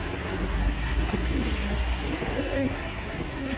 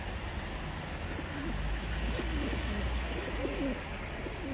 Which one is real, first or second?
second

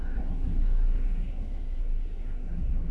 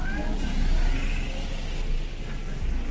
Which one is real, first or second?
second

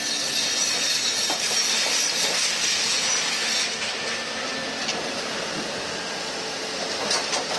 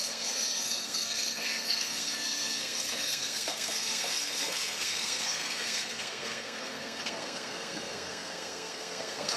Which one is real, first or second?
first